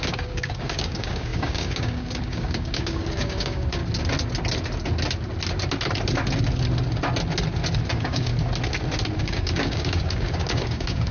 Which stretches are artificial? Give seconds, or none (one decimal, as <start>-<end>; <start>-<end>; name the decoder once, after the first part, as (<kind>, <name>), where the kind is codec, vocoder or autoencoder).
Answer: 0.0-3.8 (codec, DAC); 7.9-8.3; 9.2-11.1

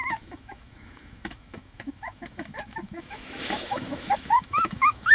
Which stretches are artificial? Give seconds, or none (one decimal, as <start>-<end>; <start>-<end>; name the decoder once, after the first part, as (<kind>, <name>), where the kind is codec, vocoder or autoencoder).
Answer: 0.0-5.1 (autoencoder, DAC-VAE)

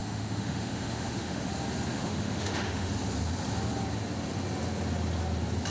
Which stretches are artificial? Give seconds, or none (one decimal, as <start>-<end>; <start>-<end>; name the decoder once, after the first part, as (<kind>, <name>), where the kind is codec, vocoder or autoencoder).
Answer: 0.0-1.5 (autoencoder, DAC-VAE); 1.9-2.9

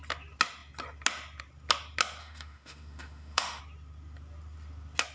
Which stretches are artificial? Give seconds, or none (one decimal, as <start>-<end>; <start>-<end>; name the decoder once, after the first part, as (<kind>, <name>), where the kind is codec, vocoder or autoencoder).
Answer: 2.2-3.6 (autoencoder, DAC-VAE)

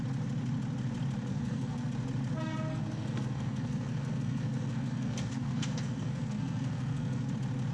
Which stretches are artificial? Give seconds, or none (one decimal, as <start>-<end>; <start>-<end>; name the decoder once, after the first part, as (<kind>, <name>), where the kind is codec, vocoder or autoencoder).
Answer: 1.3-1.9 (codec, SNAC); 2.7-7.3